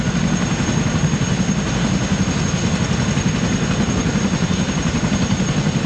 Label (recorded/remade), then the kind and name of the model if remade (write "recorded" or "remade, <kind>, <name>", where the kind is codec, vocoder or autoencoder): recorded